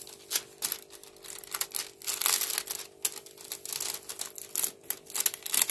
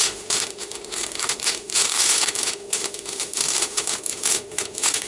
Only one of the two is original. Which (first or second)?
first